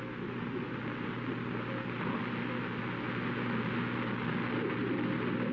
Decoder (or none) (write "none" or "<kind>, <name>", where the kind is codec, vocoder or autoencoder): none